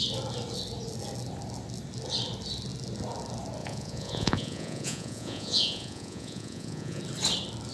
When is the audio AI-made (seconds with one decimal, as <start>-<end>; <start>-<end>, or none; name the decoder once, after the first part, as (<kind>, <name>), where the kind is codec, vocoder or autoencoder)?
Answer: 3.6-7.0 (vocoder, Vocos)